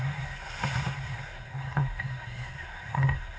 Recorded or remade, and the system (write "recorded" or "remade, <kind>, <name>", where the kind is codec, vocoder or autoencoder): remade, codec, SNAC